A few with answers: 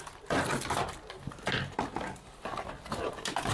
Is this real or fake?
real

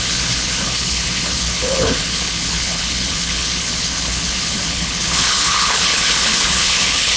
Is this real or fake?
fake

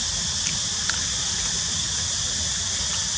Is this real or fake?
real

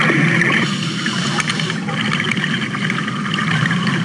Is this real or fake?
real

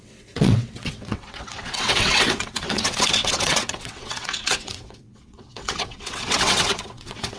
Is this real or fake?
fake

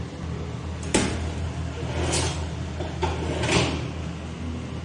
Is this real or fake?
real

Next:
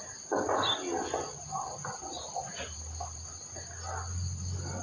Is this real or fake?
real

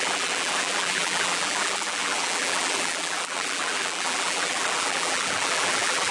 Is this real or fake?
fake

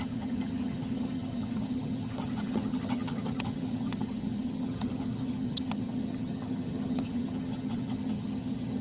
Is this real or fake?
fake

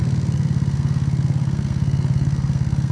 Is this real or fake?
fake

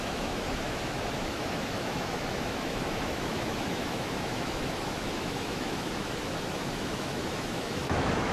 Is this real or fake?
fake